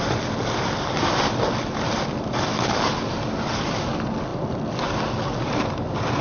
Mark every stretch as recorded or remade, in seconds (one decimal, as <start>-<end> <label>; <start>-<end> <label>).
0.0-6.2 remade